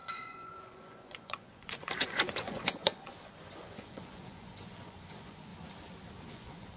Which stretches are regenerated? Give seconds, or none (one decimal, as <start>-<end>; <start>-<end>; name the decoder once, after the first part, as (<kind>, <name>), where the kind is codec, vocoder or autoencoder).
0.0-5.5 (vocoder, Vocos); 6.3-6.8